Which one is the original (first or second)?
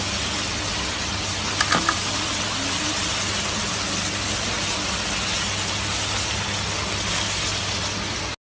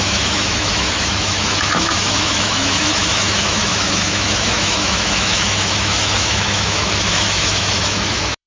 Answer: first